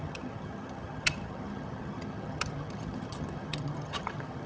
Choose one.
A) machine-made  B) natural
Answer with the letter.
A